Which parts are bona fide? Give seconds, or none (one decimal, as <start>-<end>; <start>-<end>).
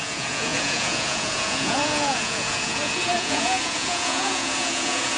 none